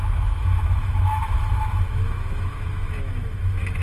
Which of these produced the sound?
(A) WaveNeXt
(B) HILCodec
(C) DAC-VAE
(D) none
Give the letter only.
C